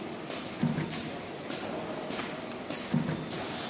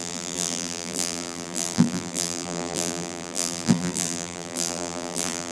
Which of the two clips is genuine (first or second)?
first